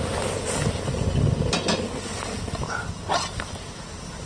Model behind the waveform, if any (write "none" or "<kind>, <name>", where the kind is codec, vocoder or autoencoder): none